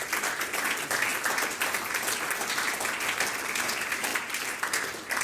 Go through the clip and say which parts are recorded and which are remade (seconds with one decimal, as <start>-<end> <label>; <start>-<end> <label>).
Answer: 0.0-5.2 recorded